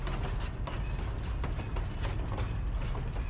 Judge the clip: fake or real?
real